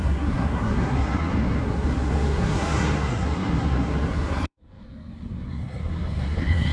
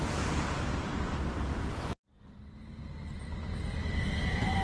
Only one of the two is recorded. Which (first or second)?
second